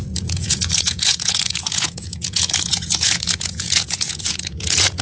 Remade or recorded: remade